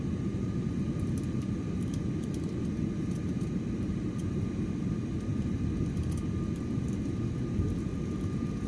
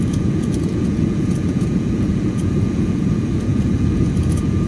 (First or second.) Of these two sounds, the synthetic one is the second